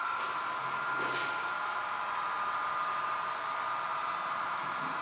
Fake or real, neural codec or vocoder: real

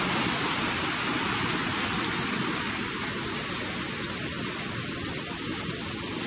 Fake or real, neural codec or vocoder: real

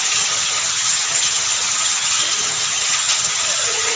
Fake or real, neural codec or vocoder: fake, vocoder, HiFi-GAN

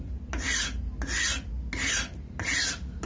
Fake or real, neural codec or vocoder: real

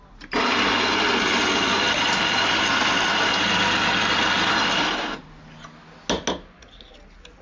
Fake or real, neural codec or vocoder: real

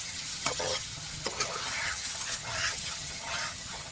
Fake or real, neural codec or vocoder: fake, vocoder, HiFi-GAN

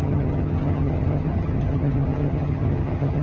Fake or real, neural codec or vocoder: fake, vocoder, HiFi-GAN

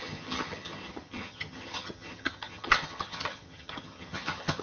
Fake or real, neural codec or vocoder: fake, vocoder, HiFi-GAN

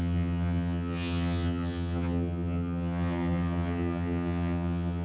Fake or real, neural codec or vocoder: fake, vocoder, HiFi-GAN